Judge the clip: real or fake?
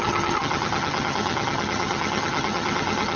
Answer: fake